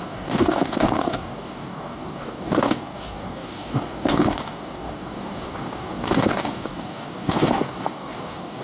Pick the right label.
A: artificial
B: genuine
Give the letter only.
A